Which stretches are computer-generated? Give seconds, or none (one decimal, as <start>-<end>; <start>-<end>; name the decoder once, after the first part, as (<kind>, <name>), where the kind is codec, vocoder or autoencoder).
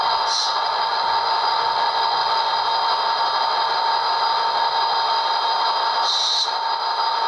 0.0-2.5 (vocoder, Vocos)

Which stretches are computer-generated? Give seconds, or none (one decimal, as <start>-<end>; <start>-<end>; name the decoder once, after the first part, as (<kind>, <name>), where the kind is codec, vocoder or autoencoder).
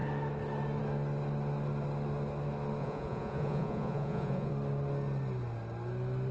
2.8-4.5 (vocoder, Vocos)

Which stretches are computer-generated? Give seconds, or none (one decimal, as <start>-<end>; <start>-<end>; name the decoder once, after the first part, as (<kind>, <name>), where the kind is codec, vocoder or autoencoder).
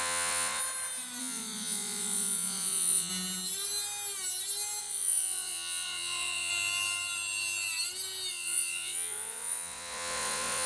0.0-0.6 (vocoder, Vocos); 1.2-3.1; 4.8-6.5; 8.3-10.7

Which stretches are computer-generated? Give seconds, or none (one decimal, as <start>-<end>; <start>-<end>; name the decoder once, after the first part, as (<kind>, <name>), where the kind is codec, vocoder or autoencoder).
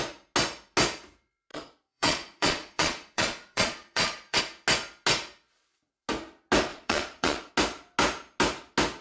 1.5-4.4 (vocoder, Vocos); 6.7-7.5